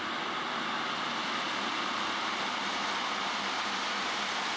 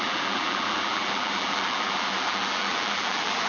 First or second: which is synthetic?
second